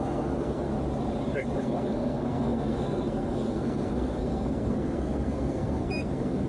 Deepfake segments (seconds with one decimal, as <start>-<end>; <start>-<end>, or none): 0.0-0.7; 1.6-6.5